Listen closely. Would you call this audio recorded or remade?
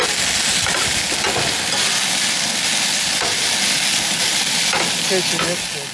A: recorded